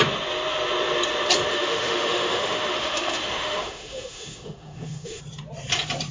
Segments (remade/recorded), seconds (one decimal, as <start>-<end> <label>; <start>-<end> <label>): 0.0-1.5 recorded; 1.5-5.2 remade; 5.2-6.1 recorded